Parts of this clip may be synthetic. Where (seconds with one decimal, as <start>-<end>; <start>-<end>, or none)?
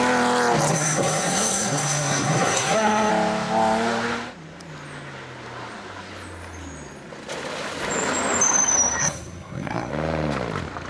0.7-3.1; 9.0-9.9